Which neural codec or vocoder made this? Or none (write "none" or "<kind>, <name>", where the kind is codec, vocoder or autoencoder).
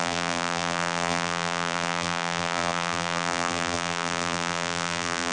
vocoder, BigVGAN v2